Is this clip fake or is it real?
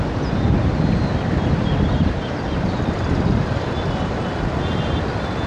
real